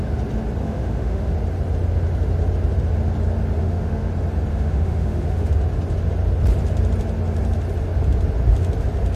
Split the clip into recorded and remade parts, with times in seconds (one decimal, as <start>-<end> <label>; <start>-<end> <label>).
0.0-0.6 recorded; 0.6-1.3 remade; 1.3-3.6 recorded; 3.6-4.1 remade; 4.1-4.5 recorded; 4.5-5.5 remade; 5.5-9.2 recorded